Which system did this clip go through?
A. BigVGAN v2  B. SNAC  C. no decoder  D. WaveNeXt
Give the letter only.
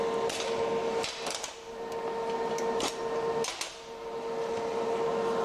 C